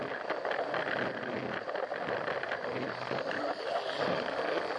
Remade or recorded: recorded